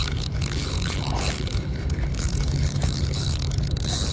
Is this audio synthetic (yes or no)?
yes